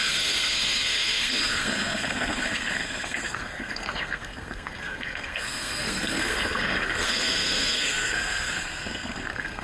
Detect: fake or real fake